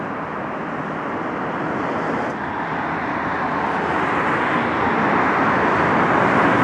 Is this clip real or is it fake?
real